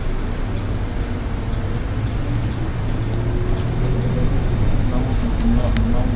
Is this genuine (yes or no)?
yes